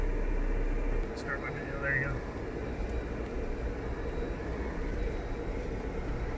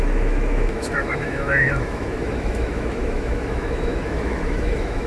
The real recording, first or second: first